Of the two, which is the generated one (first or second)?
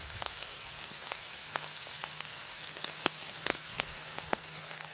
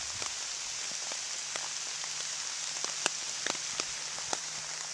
first